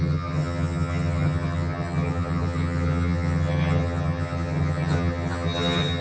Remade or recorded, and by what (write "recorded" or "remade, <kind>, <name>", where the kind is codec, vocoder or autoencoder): remade, vocoder, HiFi-GAN